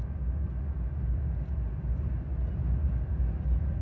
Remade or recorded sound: recorded